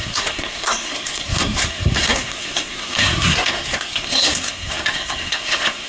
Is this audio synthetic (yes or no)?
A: yes